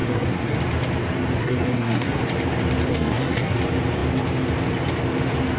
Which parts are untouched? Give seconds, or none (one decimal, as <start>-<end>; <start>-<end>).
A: 0.6-1.4; 2.2-2.9; 3.6-5.6